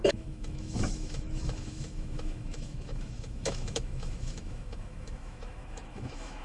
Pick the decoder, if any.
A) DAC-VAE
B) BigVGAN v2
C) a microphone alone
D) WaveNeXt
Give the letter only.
A